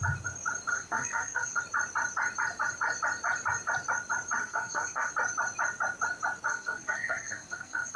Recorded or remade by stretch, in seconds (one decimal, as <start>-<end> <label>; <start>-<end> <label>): 0.0-0.7 recorded; 0.7-1.6 remade; 1.6-4.4 recorded; 4.4-5.1 remade; 5.1-6.5 recorded; 6.5-8.0 remade